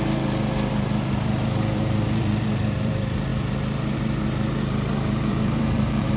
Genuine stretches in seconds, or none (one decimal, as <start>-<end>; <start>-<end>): none